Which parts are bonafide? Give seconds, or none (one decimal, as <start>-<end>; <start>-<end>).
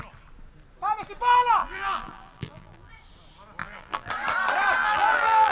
0.0-1.6; 2.9-3.6; 4.1-4.8